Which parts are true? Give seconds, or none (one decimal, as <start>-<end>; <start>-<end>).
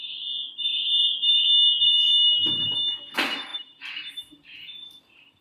0.0-0.7; 1.4-3.5